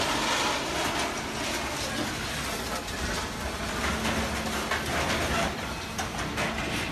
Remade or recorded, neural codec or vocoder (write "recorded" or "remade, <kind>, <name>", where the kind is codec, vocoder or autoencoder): recorded